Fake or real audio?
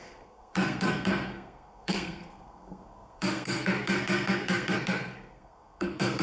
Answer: fake